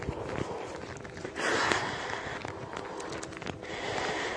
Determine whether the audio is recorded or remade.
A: recorded